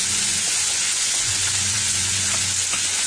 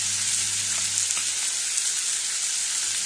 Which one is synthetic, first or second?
first